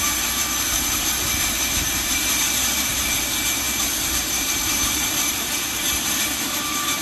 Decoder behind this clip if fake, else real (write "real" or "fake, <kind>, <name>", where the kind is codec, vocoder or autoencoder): fake, vocoder, BigVGAN v2